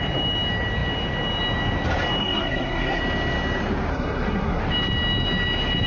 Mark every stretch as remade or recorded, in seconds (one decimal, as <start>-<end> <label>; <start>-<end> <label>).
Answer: 0.0-2.2 recorded; 2.2-3.0 remade; 3.0-3.9 recorded; 3.9-4.6 remade; 4.6-5.9 recorded